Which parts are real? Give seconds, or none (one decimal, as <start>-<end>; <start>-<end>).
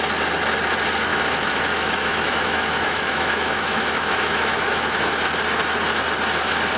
0.0-1.1; 5.2-6.8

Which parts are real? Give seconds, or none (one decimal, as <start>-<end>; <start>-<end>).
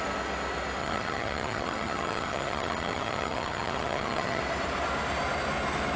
0.0-0.8; 4.4-6.0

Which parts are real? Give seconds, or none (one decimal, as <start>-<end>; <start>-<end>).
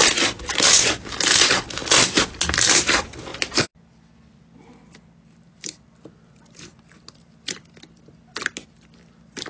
0.0-9.5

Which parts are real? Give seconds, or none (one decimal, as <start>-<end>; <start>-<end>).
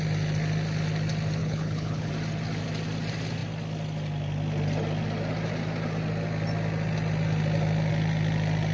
0.0-1.4; 2.1-8.7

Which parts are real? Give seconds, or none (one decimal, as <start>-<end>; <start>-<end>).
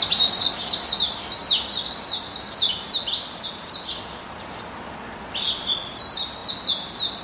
0.0-7.2